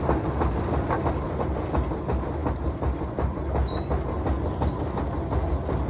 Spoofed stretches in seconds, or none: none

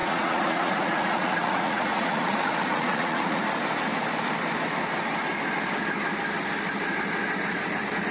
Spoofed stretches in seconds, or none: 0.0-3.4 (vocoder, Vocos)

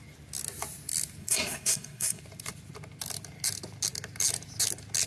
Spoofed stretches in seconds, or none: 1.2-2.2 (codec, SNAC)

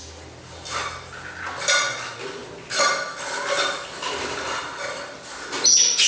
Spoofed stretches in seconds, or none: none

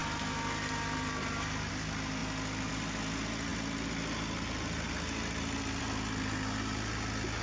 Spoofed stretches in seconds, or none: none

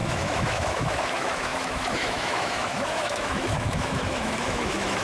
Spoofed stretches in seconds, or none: 0.0-5.0 (autoencoder, DAC-VAE)

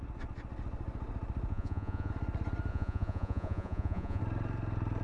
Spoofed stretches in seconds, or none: 1.5-2.1 (vocoder, Vocos); 2.7-4.2